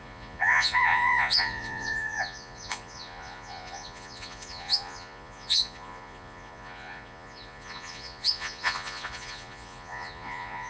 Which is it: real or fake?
fake